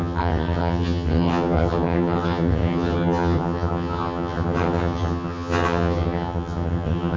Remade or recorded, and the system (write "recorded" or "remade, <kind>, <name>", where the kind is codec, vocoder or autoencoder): remade, vocoder, HiFi-GAN